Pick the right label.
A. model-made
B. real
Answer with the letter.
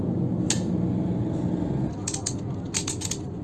B